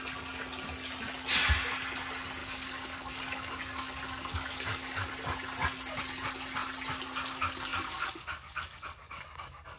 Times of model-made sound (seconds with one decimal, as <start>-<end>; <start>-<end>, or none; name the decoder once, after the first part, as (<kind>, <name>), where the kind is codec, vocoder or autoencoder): 2.4-5.1 (codec, DAC); 7.7-9.8